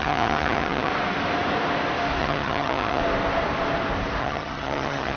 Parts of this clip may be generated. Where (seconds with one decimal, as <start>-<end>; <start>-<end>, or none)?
0.0-0.9; 2.2-3.0; 4.2-5.2